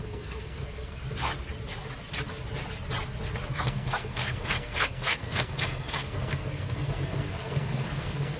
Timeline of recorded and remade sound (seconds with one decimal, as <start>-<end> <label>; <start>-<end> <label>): 0.0-1.0 remade; 1.0-3.5 recorded; 3.5-8.4 remade